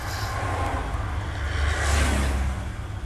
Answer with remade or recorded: recorded